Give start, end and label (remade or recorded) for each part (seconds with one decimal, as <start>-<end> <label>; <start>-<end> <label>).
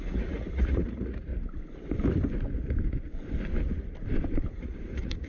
0.0-1.3 remade; 1.3-4.5 recorded; 4.5-5.3 remade